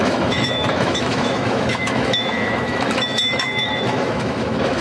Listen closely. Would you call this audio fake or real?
fake